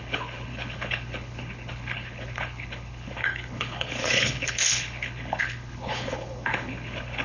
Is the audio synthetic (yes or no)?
yes